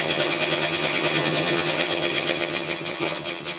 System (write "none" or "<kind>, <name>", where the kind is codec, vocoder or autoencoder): vocoder, HiFi-GAN